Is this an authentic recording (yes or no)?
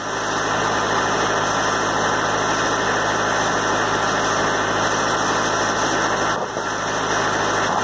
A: yes